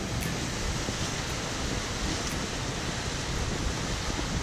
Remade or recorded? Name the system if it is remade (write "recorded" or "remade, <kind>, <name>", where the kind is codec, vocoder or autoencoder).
recorded